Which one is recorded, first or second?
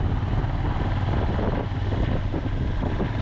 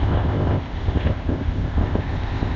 first